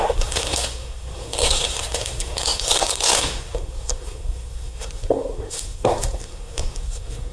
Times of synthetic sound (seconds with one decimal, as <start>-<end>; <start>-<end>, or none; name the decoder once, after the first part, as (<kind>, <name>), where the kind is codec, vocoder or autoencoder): 0.0-7.3 (codec, SNAC)